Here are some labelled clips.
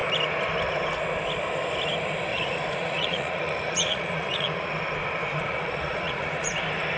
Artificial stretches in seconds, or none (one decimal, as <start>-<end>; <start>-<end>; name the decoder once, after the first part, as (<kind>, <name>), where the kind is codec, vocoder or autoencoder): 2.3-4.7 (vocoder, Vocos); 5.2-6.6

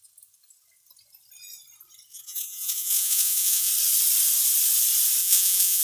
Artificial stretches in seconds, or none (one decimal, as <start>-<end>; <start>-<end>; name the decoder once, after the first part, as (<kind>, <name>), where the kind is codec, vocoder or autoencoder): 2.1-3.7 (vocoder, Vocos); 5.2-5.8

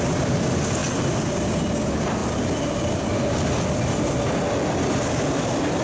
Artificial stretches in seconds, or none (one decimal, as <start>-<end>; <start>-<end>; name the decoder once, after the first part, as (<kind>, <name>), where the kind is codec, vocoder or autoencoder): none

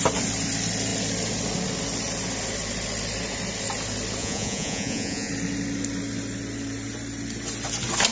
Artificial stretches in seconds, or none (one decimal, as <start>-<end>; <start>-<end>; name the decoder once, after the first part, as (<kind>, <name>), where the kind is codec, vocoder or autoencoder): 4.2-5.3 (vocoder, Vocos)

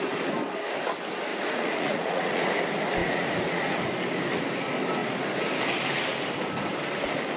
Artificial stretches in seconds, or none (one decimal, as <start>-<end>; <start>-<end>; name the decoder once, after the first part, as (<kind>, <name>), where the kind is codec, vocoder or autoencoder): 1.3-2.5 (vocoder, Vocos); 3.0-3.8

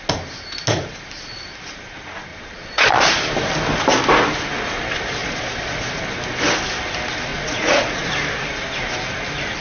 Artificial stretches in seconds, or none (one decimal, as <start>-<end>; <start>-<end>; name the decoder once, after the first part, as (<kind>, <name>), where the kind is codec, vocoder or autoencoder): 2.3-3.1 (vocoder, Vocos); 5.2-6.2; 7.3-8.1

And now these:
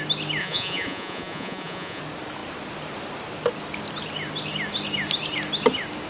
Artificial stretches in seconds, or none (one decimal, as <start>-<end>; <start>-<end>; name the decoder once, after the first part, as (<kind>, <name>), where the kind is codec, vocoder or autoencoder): 0.4-2.0 (vocoder, Vocos)